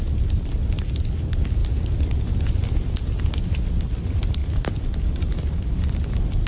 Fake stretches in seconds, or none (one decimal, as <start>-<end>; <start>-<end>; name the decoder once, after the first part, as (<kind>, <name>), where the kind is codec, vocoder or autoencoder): 4.4-5.9 (vocoder, BigVGAN v2)